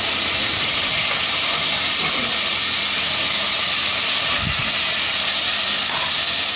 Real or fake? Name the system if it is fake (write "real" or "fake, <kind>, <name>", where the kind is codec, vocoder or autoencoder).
fake, vocoder, BigVGAN v2